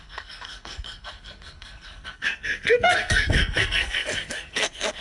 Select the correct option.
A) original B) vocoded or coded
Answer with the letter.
B